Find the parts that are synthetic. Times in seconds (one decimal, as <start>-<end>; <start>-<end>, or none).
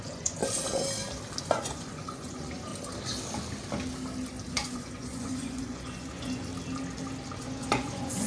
0.0-0.4; 1.4-2.7; 4.5-6.5; 7.4-8.3